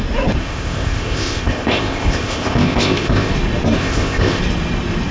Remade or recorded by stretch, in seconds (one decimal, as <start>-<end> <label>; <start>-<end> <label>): 0.0-0.4 recorded; 0.4-3.3 remade; 3.3-3.8 recorded; 3.8-4.4 remade; 4.4-5.1 recorded